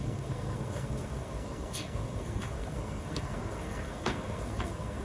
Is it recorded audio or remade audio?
remade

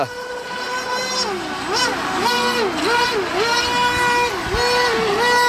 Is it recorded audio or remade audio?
recorded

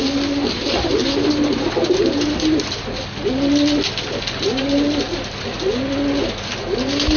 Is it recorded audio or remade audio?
recorded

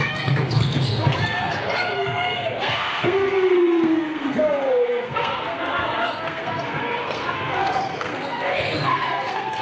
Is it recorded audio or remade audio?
remade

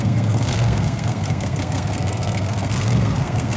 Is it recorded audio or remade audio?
remade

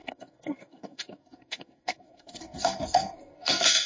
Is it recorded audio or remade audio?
remade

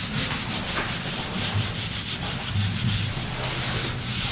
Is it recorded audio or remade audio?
recorded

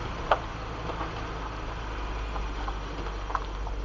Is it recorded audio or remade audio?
recorded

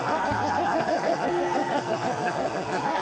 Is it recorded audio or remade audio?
remade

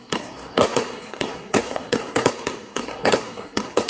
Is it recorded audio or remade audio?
remade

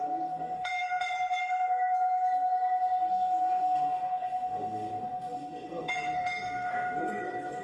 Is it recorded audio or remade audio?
remade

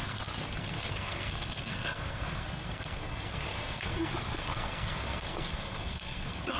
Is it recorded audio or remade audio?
remade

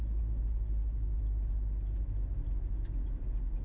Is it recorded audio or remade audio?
recorded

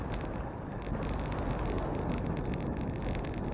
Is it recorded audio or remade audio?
recorded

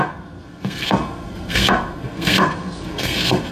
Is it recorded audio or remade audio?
remade